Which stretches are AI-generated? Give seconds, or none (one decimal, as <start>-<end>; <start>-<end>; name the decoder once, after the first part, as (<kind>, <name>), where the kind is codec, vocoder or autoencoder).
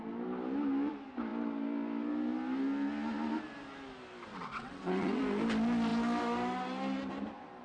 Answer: 4.3-5.2 (vocoder, WaveNeXt)